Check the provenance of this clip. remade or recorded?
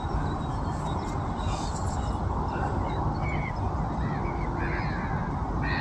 recorded